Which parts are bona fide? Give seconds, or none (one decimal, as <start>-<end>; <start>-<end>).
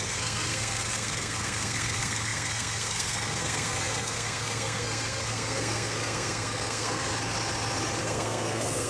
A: 7.1-8.0